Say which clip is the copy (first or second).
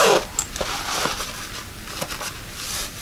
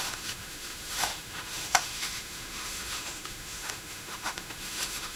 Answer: second